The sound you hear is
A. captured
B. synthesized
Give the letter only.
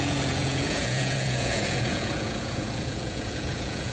B